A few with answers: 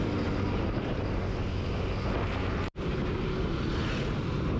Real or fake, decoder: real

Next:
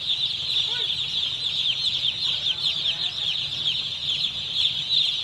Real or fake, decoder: real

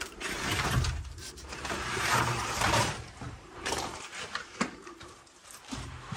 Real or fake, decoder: fake, vocoder, BigVGAN v2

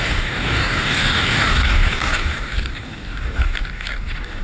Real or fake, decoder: fake, codec, DAC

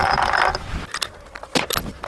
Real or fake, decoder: real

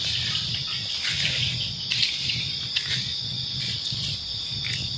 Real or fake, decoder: real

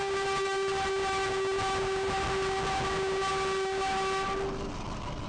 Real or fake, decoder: real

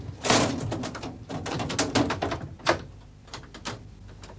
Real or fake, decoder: real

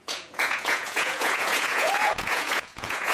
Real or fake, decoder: fake, vocoder, Vocos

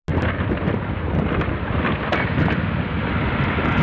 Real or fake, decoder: real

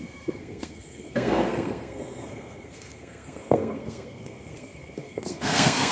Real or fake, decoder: fake, codec, SNAC